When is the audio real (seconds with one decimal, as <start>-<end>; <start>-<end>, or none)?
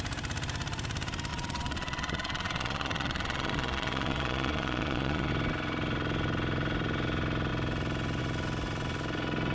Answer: 0.0-1.3; 5.3-9.5